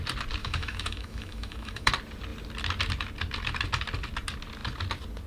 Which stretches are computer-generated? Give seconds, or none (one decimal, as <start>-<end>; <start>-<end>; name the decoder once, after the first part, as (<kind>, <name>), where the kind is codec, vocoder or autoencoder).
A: 0.4-1.9 (autoencoder, DAC-VAE)